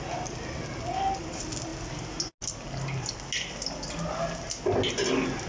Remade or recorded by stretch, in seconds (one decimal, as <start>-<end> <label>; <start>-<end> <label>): 0.0-5.5 recorded